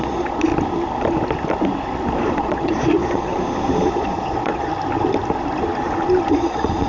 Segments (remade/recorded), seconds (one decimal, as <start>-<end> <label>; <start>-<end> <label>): 0.0-0.5 remade; 0.5-2.3 recorded; 2.3-3.3 remade; 3.3-3.9 recorded; 3.9-4.7 remade; 4.7-6.3 recorded; 6.3-6.9 remade